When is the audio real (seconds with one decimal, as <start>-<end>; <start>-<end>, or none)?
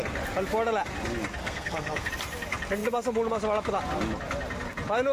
0.0-1.4; 2.1-5.1